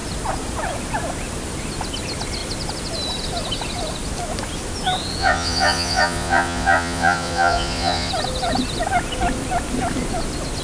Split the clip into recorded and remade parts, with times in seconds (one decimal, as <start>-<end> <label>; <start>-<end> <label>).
0.0-5.2 recorded; 5.2-8.1 remade; 8.1-10.6 recorded